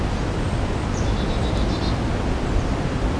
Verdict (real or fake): real